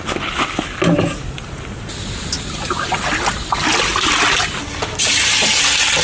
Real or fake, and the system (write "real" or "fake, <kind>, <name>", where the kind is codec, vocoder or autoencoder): real